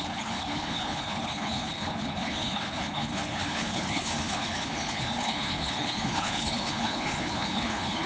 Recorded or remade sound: remade